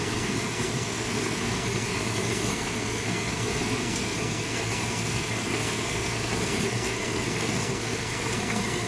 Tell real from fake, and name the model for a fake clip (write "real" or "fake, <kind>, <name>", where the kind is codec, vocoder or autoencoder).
fake, codec, SNAC